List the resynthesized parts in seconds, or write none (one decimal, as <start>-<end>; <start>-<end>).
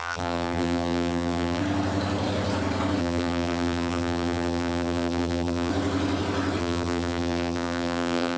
0.0-1.6; 3.0-5.7; 6.6-8.4